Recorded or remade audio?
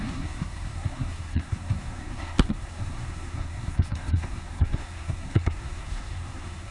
remade